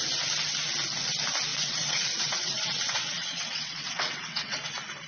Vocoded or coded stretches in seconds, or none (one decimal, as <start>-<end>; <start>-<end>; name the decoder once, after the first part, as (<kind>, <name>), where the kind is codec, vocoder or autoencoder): 1.5-4.6 (vocoder, WaveNeXt)